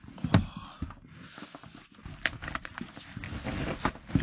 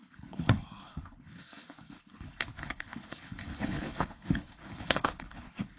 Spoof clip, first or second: second